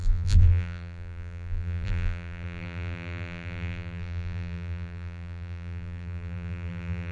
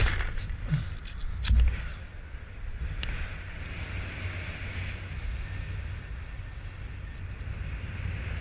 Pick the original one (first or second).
second